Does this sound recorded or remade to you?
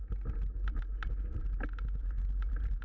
recorded